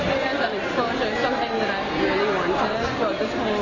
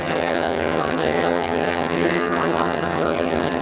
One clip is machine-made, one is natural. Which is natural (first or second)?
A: first